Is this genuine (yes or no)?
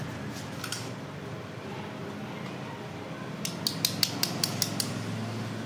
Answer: yes